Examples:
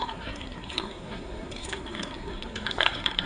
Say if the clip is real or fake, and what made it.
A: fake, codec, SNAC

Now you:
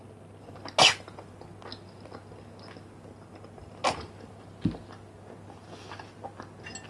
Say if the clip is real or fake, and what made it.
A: real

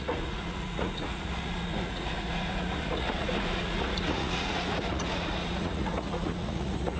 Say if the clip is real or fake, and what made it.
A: fake, vocoder, Vocos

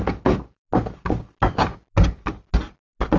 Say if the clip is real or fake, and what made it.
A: real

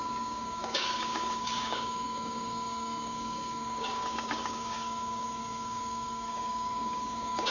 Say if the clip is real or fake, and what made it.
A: fake, codec, DAC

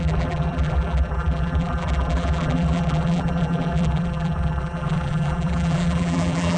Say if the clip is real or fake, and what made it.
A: fake, vocoder, BigVGAN v2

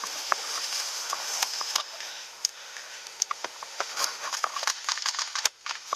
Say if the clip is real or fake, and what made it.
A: fake, autoencoder, DAC-VAE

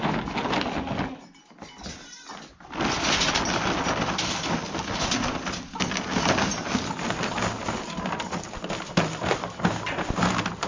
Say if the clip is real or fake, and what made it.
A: real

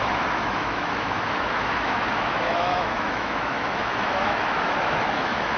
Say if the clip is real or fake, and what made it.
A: fake, autoencoder, DAC-VAE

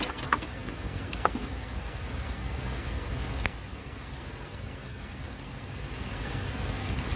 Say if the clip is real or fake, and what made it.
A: fake, codec, SNAC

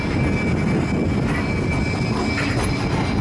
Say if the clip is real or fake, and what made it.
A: real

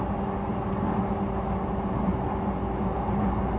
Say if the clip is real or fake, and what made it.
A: real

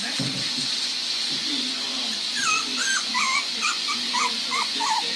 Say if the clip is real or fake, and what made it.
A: fake, vocoder, Vocos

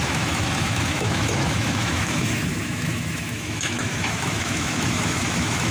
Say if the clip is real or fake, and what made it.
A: fake, autoencoder, DAC-VAE